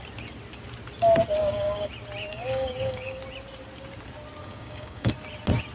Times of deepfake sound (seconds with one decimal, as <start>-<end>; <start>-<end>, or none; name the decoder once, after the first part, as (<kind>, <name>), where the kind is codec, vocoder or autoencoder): 1.4-1.9 (codec, DAC); 2.3-3.2; 4.4-5.1